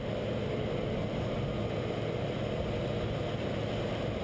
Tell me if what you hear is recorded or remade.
recorded